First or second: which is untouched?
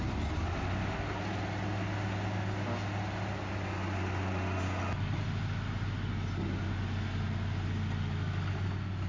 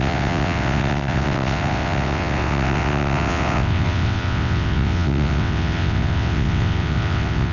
first